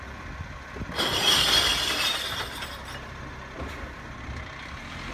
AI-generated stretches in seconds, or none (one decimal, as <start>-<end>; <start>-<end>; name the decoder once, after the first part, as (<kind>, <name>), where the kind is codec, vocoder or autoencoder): 1.1-3.2 (vocoder, BigVGAN v2)